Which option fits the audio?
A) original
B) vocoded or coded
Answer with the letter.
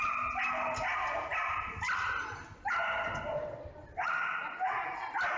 A